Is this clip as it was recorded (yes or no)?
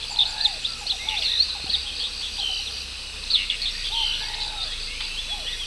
yes